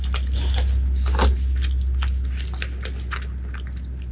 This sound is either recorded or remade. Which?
recorded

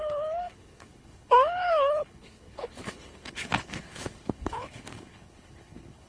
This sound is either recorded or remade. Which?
remade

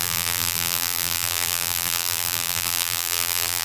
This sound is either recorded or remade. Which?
remade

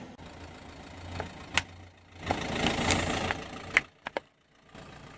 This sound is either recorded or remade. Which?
recorded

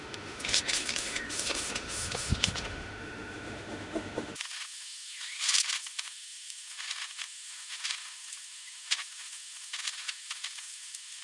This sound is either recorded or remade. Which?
remade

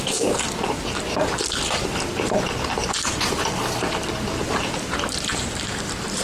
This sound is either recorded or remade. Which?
remade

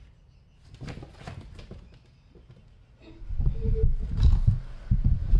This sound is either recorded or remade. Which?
recorded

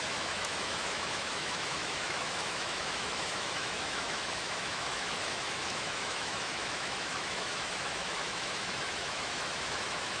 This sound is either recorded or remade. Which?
remade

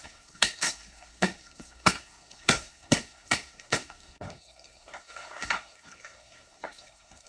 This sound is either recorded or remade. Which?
remade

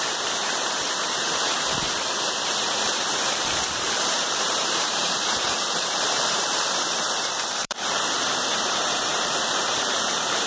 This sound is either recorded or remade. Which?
remade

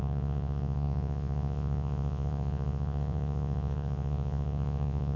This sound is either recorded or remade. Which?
remade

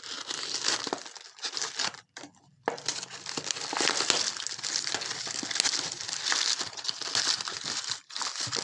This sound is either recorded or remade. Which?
recorded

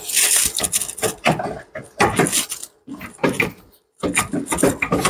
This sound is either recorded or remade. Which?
recorded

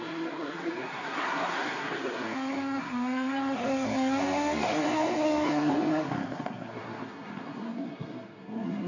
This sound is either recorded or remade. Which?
remade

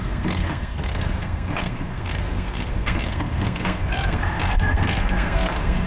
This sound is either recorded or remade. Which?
remade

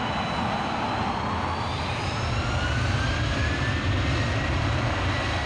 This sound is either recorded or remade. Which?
recorded